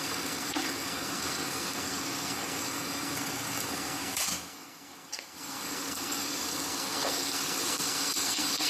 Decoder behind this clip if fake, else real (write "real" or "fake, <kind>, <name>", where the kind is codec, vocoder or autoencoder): fake, codec, SNAC